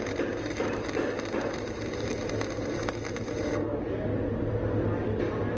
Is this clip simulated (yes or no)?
no